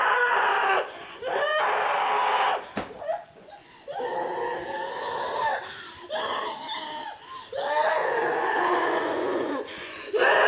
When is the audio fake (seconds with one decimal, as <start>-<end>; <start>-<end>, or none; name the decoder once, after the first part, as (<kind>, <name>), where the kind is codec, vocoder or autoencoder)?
0.0-0.5 (vocoder, Vocos); 1.1-1.5; 3.0-4.1; 7.9-10.5